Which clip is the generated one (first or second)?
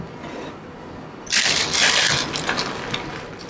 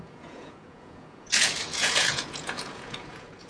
second